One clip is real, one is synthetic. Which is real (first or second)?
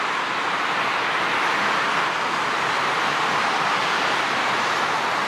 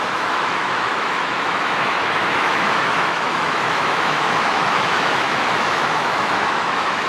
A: first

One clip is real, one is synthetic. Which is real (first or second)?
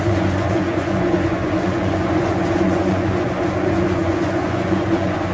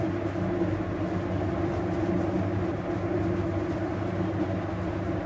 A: second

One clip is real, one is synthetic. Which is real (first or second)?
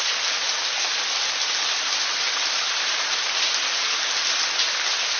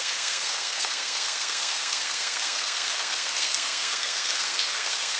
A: first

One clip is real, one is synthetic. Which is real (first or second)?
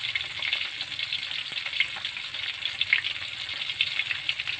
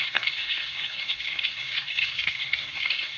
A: first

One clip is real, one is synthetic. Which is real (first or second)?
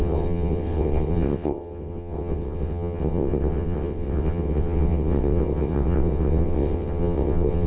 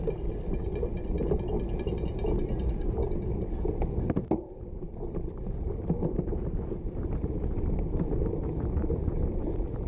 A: second